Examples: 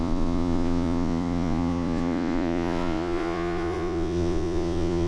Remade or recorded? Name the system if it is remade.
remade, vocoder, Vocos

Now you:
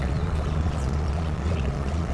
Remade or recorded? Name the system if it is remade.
remade, vocoder, Vocos